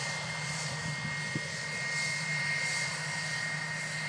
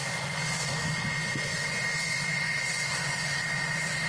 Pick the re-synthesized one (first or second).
second